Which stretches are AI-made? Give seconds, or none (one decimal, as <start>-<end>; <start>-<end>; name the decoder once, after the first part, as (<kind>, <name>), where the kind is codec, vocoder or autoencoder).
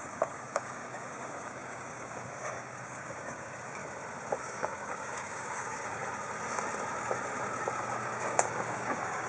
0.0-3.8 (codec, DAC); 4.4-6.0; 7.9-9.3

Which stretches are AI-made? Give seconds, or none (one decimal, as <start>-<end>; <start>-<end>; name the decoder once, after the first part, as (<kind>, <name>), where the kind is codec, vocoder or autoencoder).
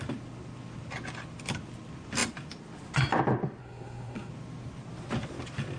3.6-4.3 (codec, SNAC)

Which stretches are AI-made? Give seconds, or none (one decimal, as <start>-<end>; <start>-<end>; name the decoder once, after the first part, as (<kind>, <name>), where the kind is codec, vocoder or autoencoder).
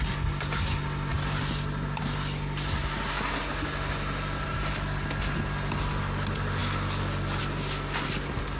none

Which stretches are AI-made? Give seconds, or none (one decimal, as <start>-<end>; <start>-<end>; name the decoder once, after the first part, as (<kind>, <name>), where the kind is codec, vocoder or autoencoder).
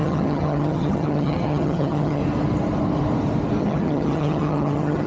0.0-2.2 (vocoder, HiFi-GAN); 3.6-5.1